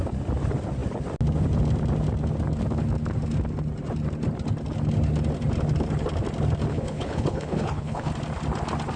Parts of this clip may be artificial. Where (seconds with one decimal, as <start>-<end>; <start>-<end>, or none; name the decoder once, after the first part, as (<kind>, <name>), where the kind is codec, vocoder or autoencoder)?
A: 6.7-8.1 (codec, HILCodec)